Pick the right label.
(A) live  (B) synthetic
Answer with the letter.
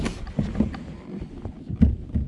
A